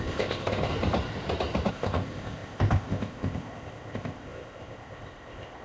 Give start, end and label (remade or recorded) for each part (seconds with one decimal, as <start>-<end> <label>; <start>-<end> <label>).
0.0-0.7 remade; 0.7-1.7 recorded; 1.7-5.6 remade